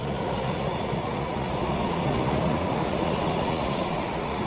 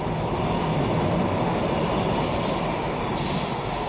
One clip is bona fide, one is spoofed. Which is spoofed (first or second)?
first